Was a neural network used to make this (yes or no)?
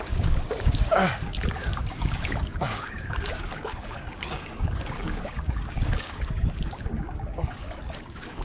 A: yes